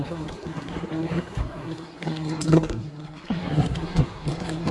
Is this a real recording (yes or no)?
no